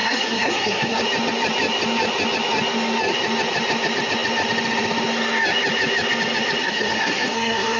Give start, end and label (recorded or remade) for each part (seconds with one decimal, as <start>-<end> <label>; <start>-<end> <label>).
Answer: 0.0-1.0 remade; 1.0-6.6 recorded; 6.6-7.8 remade